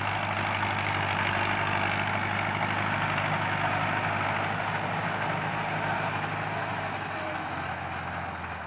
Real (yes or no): yes